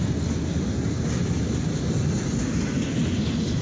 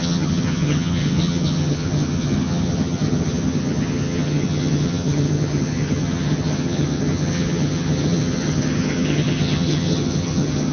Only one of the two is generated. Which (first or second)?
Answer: second